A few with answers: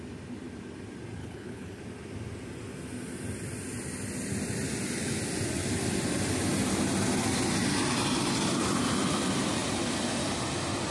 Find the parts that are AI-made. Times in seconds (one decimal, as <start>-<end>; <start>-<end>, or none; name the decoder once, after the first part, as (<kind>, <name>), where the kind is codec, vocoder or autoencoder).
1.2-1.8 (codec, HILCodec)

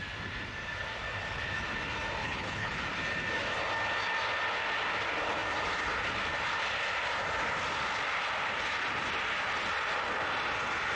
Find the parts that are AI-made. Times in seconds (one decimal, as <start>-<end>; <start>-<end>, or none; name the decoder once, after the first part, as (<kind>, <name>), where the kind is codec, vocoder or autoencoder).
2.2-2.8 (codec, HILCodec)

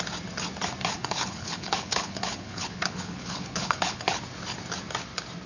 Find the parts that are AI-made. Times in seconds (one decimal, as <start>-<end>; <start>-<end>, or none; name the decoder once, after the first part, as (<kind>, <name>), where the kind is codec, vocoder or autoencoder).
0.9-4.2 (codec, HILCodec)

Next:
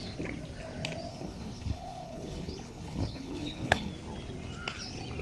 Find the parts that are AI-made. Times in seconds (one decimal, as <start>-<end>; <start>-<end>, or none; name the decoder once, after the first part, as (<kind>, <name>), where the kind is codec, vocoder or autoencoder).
1.1-3.9 (codec, HILCodec)

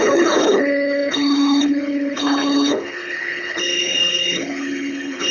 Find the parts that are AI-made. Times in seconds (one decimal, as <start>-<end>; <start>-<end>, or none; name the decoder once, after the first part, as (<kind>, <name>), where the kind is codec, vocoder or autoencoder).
0.0-5.3 (codec, HILCodec)